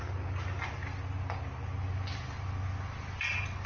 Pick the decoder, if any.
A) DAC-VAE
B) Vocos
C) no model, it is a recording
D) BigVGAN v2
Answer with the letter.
C